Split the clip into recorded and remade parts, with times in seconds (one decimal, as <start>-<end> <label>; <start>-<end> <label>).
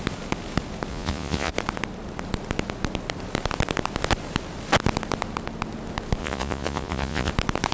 0.0-0.9 recorded; 0.9-1.5 remade; 1.5-6.2 recorded; 6.2-7.3 remade; 7.3-7.7 recorded